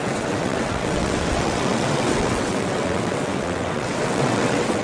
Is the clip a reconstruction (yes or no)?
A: yes